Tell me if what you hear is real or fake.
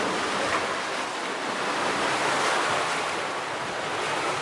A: real